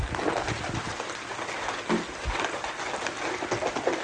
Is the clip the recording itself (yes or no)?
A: yes